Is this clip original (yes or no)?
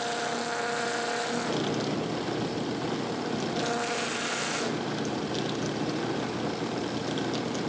yes